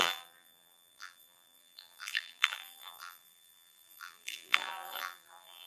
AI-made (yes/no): yes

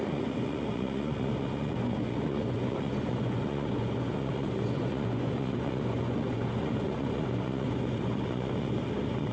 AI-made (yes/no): yes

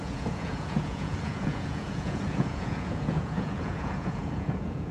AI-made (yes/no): yes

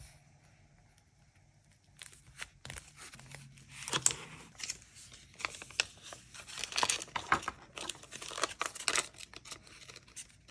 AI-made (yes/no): no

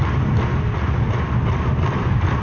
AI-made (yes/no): no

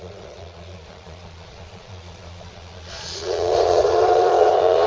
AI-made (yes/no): yes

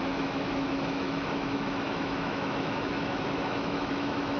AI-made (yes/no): yes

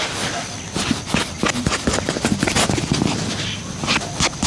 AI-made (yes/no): no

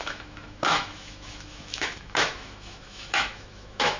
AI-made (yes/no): yes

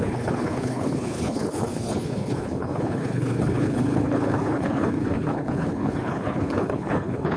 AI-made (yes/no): yes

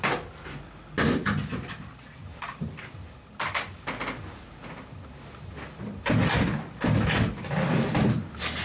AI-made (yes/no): no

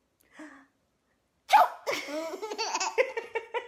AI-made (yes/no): no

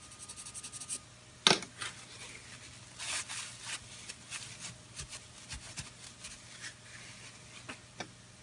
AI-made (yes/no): no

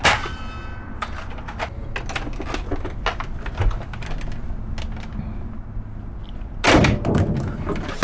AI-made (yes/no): no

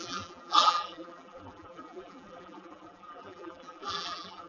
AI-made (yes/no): yes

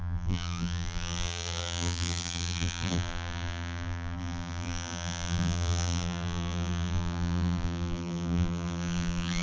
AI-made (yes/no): yes